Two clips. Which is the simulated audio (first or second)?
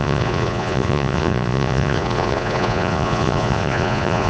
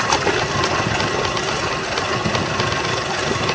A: first